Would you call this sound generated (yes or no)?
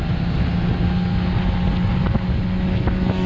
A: no